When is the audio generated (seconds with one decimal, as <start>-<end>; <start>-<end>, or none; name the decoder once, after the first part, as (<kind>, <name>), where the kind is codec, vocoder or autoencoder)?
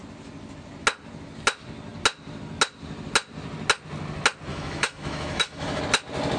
4.5-5.8 (autoencoder, DAC-VAE)